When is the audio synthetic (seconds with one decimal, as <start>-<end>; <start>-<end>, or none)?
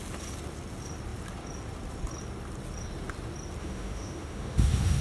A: 3.6-5.0